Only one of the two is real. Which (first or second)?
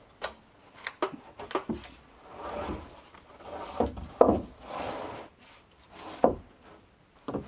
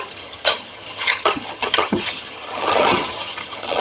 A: first